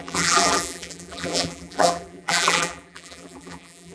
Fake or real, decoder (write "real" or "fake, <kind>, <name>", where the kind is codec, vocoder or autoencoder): fake, vocoder, BigVGAN v2